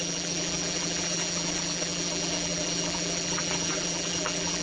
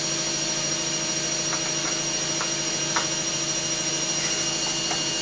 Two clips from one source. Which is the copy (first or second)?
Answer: first